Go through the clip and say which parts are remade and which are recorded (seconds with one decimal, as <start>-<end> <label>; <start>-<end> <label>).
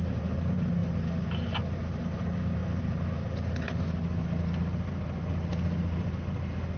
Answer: 0.0-6.8 recorded